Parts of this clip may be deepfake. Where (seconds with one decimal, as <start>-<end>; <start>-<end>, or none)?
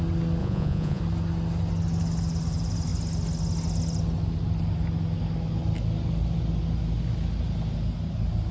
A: 0.4-1.0